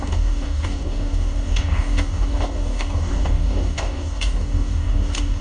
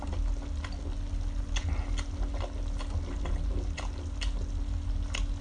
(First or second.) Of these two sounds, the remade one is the first